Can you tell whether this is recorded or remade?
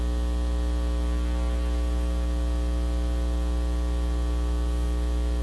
recorded